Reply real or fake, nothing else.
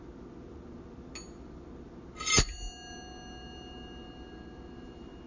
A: real